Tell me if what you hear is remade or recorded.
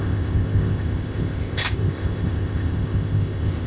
remade